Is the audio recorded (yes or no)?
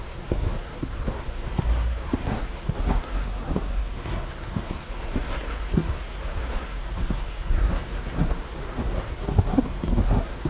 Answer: no